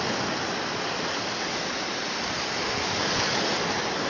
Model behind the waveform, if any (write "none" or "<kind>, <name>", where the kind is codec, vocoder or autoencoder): none